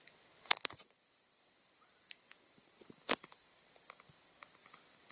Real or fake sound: fake